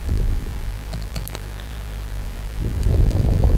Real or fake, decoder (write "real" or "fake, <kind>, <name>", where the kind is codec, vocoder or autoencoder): fake, vocoder, BigVGAN v2